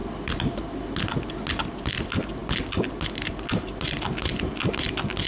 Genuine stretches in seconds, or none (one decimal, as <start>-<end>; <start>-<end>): 0.0-5.3